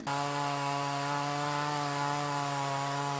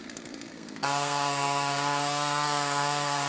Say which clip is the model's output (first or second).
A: second